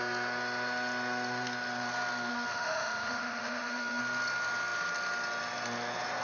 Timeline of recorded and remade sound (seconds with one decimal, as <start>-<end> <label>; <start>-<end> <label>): 0.0-2.3 recorded; 2.3-4.0 remade; 4.0-6.2 recorded